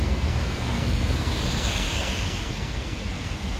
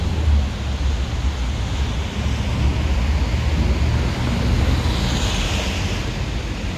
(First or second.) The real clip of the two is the second